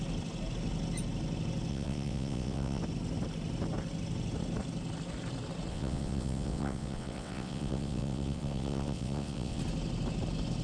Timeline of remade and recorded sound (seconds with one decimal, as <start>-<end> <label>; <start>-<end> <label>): 0.0-1.7 recorded; 1.7-2.8 remade; 2.8-5.7 recorded; 5.7-9.6 remade; 9.6-10.6 recorded